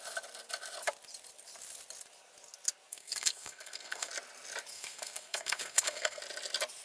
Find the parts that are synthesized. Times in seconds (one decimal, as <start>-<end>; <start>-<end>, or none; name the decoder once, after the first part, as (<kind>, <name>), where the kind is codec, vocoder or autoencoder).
2.9-4.1 (codec, SNAC); 4.7-6.2